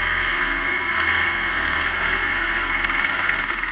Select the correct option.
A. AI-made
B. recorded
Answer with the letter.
A